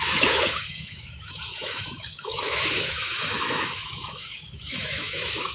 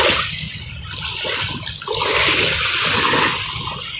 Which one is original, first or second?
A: second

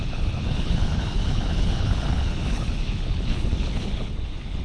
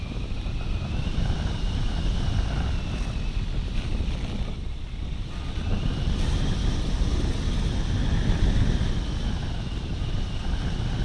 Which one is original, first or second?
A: second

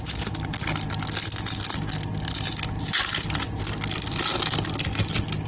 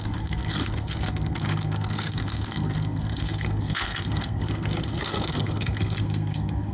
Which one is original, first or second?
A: first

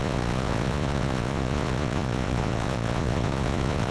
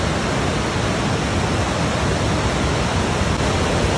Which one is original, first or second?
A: second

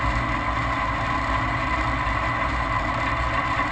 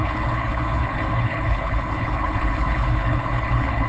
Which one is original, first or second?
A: first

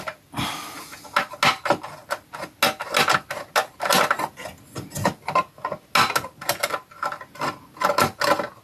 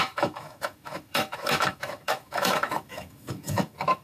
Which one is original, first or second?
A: first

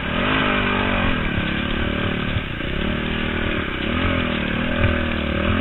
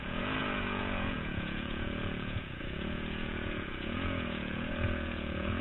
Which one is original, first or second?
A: first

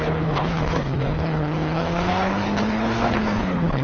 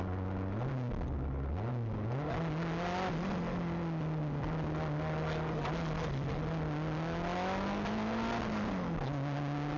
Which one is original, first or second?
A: second